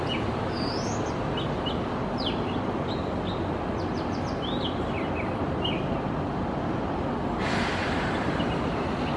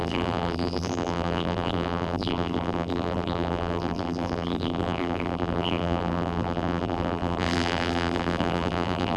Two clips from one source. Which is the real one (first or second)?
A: first